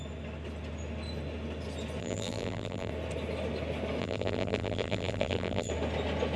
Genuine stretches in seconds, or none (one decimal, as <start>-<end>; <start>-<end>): 0.0-2.0; 2.9-4.0; 5.7-6.4